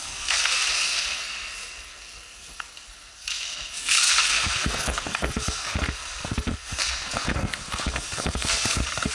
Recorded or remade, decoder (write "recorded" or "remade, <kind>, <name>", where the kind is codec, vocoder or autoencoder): remade, codec, SNAC